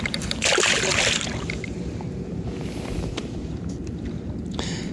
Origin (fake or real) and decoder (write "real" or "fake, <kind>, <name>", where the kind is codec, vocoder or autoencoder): fake, vocoder, BigVGAN v2